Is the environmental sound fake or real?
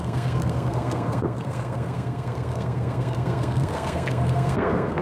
fake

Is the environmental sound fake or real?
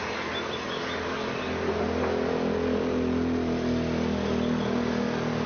real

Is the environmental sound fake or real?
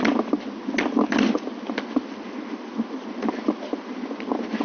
real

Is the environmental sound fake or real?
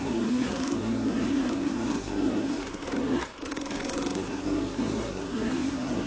fake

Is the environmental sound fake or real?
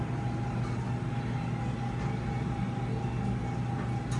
real